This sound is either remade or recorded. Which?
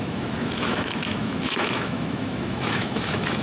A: remade